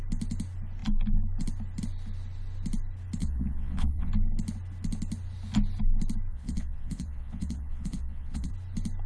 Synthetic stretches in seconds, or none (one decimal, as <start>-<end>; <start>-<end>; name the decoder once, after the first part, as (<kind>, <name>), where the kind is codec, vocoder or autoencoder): 3.2-4.1 (vocoder, WaveNeXt); 6.3-8.5